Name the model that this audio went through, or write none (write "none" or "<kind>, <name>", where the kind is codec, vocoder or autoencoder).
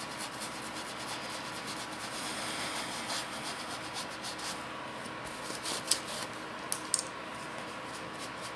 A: none